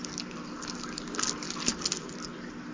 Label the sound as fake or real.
real